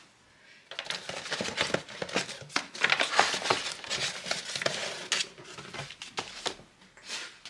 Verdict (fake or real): real